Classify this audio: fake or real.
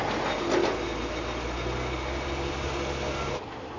real